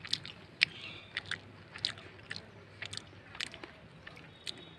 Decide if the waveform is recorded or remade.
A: recorded